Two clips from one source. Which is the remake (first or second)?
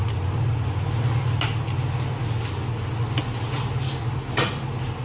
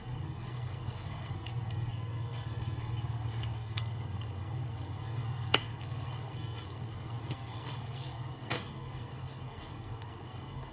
second